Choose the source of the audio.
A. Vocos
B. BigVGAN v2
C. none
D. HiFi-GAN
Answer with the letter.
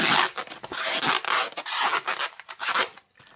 C